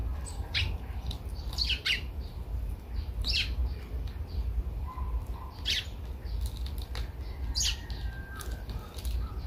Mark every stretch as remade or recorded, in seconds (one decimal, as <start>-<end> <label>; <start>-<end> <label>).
0.0-9.5 recorded